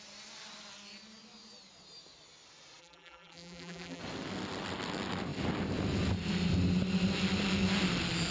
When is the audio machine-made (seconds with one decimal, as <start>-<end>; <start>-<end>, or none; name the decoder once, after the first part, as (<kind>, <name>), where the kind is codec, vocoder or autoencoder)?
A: 2.8-4.0 (vocoder, BigVGAN v2)